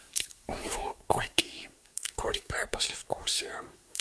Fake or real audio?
fake